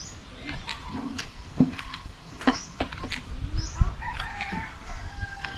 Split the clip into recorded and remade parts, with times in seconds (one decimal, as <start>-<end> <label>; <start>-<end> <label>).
0.0-0.9 recorded; 0.9-2.8 remade; 2.8-4.3 recorded; 4.3-5.6 remade

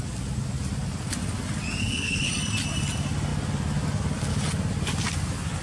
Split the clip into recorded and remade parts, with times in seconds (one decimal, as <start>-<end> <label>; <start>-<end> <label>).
0.0-1.8 recorded; 1.8-2.3 remade; 2.3-5.6 recorded

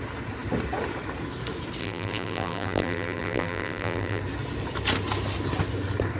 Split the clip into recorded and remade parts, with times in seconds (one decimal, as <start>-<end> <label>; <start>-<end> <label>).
0.0-1.8 recorded; 1.8-4.2 remade; 4.2-6.2 recorded

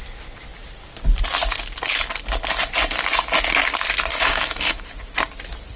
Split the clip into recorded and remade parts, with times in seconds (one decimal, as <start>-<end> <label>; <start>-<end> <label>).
0.0-4.1 recorded; 4.1-4.8 remade; 4.8-5.8 recorded